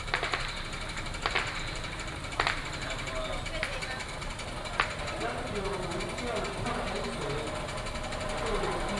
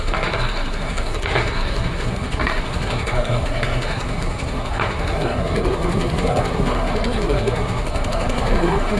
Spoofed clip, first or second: second